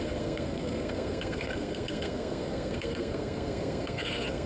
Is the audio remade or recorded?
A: remade